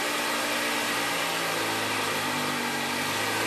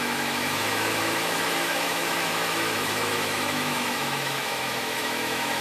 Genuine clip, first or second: first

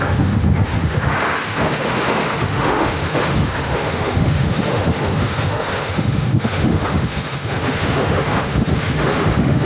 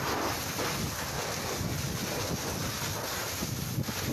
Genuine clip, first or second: second